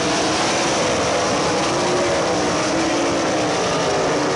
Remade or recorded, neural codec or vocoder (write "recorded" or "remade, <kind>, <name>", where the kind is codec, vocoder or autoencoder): recorded